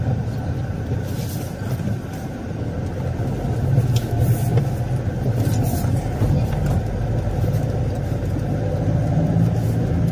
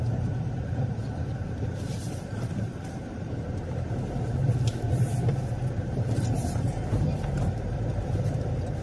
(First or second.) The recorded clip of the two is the first